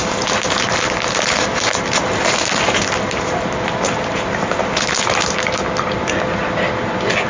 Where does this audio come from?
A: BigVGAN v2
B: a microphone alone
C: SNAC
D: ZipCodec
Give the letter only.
B